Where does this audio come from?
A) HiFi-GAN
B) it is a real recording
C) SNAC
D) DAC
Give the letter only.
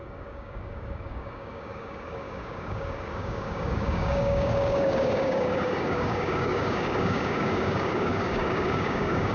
D